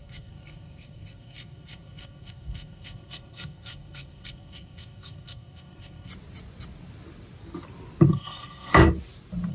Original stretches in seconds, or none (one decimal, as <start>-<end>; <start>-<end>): 6.1-8.1; 8.7-9.5